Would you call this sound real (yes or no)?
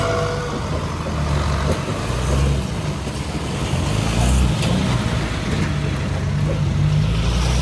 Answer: yes